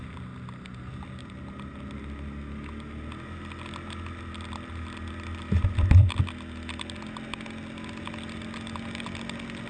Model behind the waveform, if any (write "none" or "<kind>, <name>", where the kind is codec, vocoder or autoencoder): none